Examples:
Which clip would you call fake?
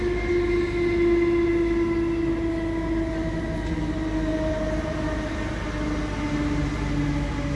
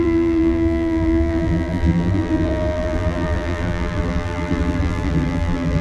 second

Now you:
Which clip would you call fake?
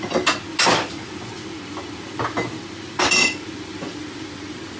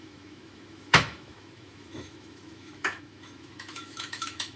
second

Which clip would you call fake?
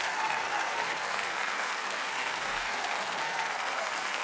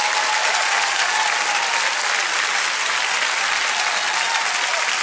first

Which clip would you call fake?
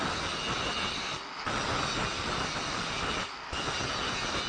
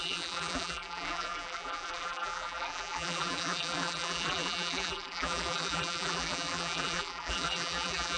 second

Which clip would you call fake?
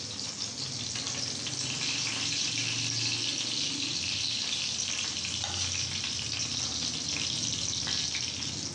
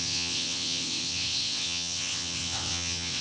second